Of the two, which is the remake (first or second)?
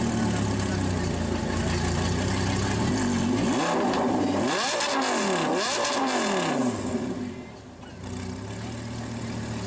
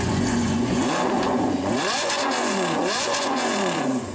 second